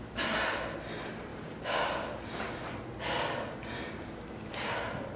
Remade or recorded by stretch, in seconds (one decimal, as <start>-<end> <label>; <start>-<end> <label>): 0.0-1.3 recorded; 1.3-2.7 remade; 2.7-5.2 recorded

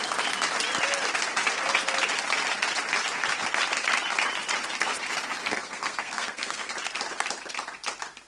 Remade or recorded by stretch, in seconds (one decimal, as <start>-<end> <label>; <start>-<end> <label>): 0.0-5.4 recorded; 5.4-6.7 remade; 6.7-8.3 recorded